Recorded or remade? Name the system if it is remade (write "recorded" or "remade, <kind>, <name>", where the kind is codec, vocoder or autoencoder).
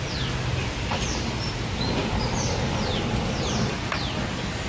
recorded